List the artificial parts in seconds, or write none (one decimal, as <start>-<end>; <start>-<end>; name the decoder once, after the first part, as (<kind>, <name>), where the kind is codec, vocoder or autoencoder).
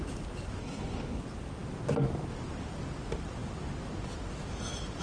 0.6-1.2 (codec, HILCodec)